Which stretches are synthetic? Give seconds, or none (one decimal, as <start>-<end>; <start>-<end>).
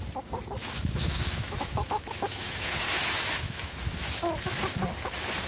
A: 0.6-3.7